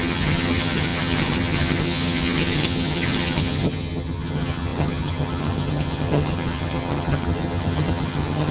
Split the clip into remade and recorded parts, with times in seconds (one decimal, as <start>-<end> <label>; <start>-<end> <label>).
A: 0.0-8.5 remade